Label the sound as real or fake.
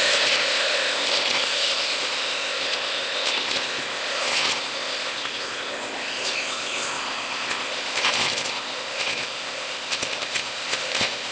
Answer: fake